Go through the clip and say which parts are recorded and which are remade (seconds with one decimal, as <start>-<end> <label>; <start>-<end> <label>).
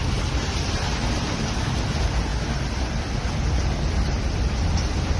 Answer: 0.0-5.2 recorded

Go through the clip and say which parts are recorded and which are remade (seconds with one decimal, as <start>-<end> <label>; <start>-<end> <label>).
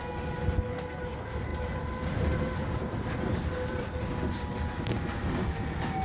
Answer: 0.0-1.5 recorded; 1.5-4.7 remade; 4.7-6.0 recorded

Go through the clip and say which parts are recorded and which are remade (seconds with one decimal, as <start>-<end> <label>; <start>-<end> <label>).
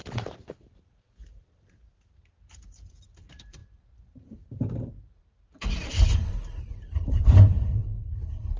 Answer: 0.0-0.8 recorded; 0.8-8.6 remade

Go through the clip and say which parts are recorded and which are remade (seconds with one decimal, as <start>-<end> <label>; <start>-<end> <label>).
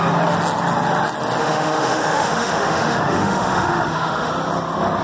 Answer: 0.0-1.4 recorded; 1.4-4.3 remade; 4.3-5.0 recorded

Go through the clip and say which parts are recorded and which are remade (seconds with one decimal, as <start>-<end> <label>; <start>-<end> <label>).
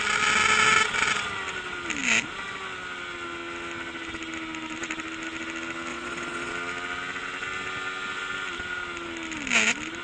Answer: 0.0-5.9 recorded; 5.9-6.5 remade; 6.5-10.0 recorded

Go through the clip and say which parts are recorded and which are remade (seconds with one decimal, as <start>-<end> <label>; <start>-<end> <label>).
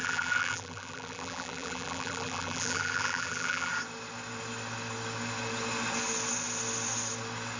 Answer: 0.0-3.7 remade; 3.7-7.6 recorded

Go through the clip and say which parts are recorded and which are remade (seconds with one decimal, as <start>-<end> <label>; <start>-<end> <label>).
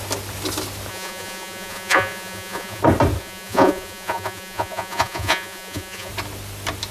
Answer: 0.0-0.9 recorded; 0.9-2.8 remade; 2.8-3.2 recorded; 3.2-6.1 remade; 6.1-6.9 recorded